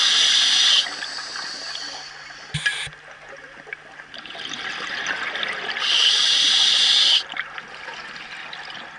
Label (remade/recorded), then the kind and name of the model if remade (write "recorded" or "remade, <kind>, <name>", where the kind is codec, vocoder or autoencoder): recorded